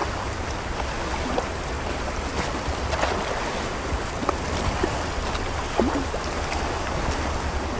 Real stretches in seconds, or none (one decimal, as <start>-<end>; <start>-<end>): 0.0-7.8